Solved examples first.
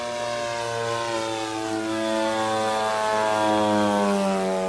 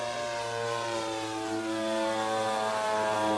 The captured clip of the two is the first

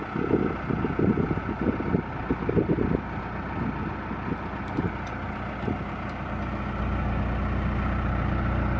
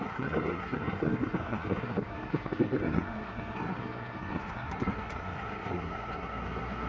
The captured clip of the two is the first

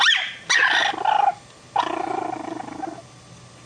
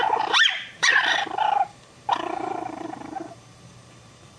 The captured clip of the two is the first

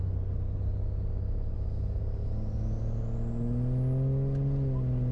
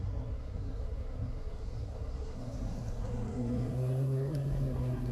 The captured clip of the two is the first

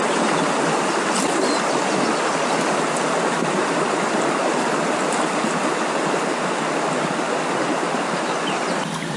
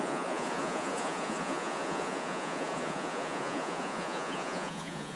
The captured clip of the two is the first